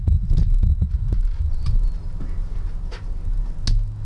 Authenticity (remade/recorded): recorded